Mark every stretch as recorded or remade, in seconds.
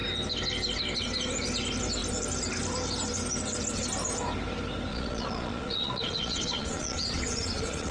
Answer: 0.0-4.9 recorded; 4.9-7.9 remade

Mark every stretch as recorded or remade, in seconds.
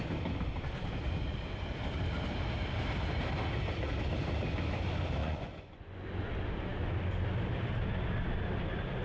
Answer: 0.0-5.2 recorded; 5.2-6.3 remade; 6.3-9.0 recorded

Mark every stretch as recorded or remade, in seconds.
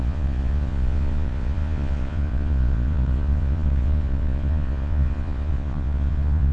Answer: 0.0-6.5 remade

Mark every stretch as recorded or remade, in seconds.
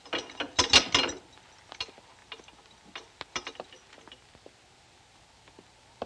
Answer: 0.0-6.1 recorded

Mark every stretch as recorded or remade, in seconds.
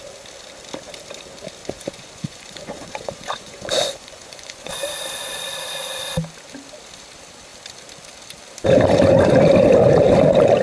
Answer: 0.0-1.6 recorded; 1.6-4.7 remade; 4.7-10.6 recorded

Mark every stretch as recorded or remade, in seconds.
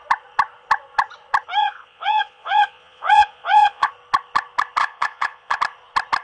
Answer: 0.0-1.6 recorded; 1.6-3.9 remade; 3.9-4.8 recorded; 4.8-5.6 remade; 5.6-6.2 recorded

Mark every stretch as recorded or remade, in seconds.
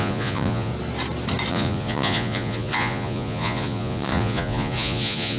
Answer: 0.0-0.7 remade; 0.7-1.5 recorded; 1.5-5.4 remade